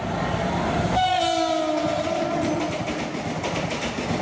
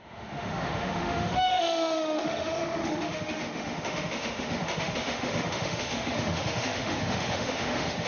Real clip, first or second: first